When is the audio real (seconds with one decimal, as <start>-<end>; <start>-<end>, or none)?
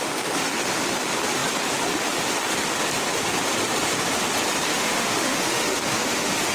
0.0-4.7